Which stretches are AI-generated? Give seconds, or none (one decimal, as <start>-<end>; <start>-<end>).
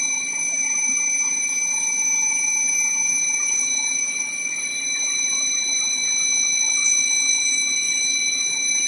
0.0-6.0; 7.3-8.9